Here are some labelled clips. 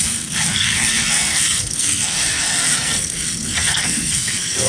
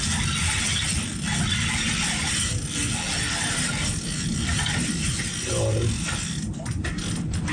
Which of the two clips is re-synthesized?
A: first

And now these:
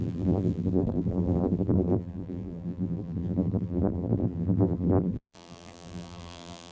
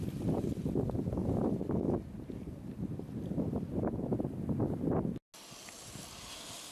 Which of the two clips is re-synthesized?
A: first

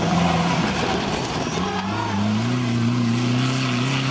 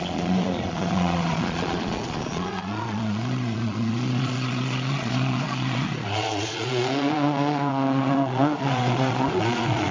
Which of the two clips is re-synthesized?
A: second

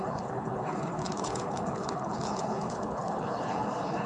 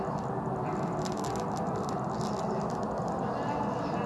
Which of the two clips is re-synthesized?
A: first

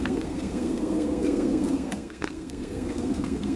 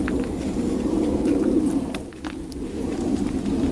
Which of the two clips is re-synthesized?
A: first